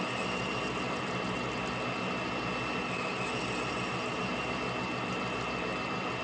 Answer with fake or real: real